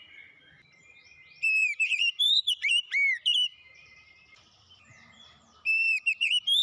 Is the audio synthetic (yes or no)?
yes